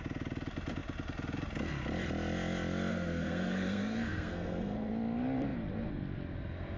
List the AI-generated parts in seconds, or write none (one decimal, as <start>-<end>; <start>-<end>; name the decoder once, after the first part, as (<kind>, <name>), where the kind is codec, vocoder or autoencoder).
2.9-4.9 (codec, SNAC)